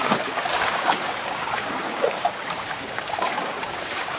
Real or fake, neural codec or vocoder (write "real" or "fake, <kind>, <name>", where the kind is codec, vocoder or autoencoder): fake, codec, DAC